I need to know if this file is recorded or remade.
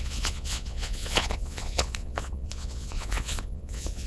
remade